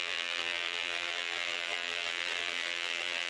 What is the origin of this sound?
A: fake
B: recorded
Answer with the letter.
A